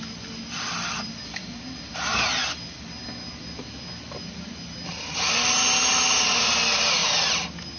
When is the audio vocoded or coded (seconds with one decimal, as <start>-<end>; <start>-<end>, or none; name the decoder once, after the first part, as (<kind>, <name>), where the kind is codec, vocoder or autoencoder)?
0.0-1.4 (vocoder, BigVGAN v2); 5.9-7.0